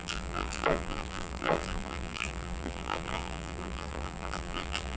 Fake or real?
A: fake